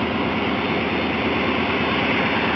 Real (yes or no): yes